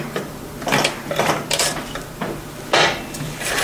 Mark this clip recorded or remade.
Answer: remade